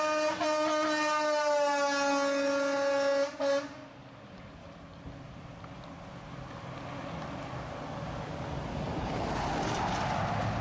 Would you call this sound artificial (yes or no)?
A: no